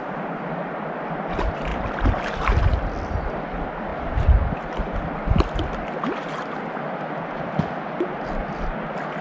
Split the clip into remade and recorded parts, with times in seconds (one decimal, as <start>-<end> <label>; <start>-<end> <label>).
0.0-9.2 recorded